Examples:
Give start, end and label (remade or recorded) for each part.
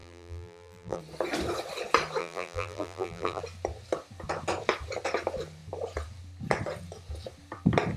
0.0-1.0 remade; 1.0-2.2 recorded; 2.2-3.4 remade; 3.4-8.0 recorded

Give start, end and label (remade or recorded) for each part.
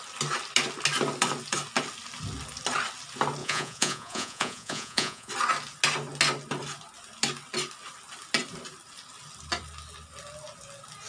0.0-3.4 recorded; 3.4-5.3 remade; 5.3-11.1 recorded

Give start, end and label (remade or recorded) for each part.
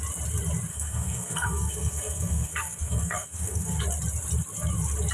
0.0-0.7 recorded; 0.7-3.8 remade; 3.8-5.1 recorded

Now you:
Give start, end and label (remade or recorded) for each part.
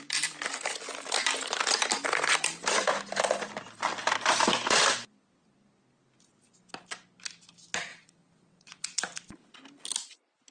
0.0-7.9 recorded; 7.9-9.0 remade; 9.0-10.5 recorded